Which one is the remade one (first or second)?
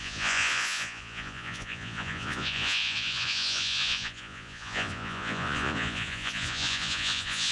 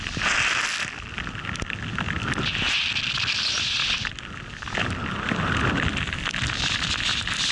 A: first